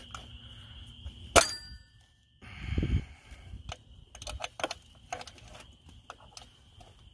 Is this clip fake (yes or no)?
no